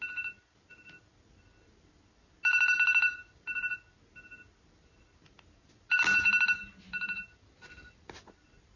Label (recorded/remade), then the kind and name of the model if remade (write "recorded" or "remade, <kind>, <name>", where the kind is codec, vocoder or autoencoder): recorded